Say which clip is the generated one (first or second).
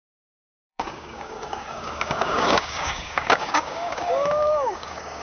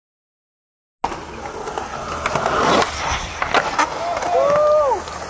first